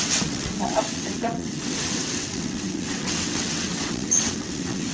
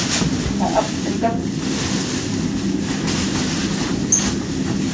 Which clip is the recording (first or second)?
second